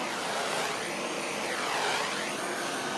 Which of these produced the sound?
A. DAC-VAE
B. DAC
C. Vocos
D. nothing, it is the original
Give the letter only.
D